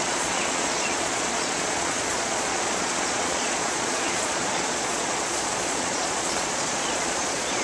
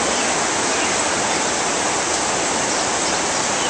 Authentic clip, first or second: second